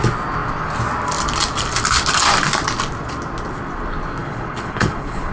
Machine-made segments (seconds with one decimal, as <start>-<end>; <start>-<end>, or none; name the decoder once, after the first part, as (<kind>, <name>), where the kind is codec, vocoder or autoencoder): 4.2-5.3 (codec, HILCodec)